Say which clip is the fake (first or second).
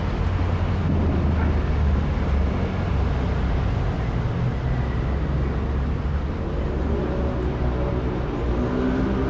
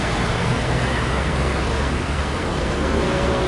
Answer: second